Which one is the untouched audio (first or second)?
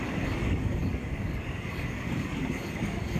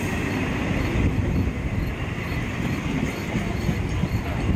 second